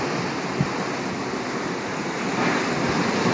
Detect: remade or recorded recorded